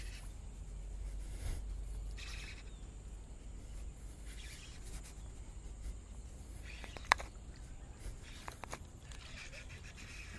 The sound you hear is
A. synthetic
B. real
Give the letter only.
B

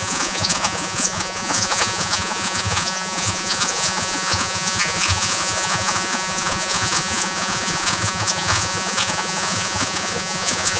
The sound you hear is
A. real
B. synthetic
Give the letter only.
B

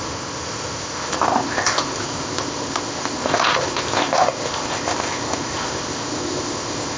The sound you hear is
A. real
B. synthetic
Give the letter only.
B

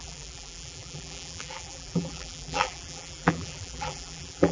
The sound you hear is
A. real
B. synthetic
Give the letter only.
B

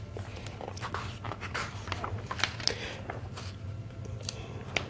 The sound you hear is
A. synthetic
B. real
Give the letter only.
B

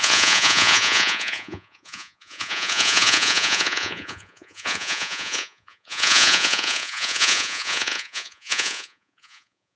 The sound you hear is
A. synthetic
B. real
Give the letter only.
A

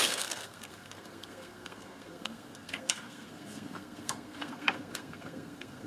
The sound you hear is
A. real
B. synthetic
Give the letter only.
B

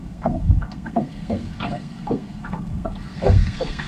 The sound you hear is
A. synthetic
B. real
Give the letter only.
A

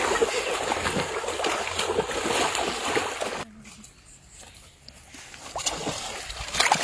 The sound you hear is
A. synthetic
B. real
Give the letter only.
B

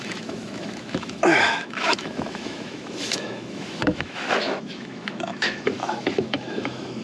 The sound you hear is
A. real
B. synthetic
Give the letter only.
B